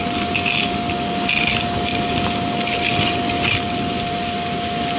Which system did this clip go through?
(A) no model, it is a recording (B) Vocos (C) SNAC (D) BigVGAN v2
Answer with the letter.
A